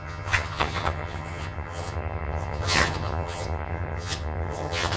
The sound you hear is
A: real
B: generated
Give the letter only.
B